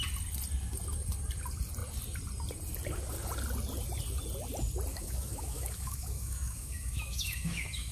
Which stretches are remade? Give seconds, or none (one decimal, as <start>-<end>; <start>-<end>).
4.9-7.9